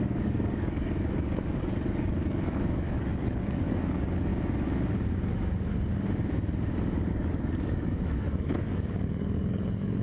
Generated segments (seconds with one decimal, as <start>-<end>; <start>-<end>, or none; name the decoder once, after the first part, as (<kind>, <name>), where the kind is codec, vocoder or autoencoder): 0.0-4.3 (codec, DAC); 7.1-10.0